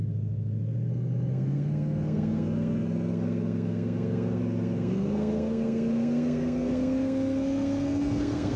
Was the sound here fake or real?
fake